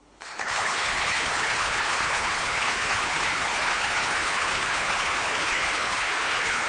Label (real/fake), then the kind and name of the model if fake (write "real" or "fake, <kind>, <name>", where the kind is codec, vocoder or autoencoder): fake, codec, HILCodec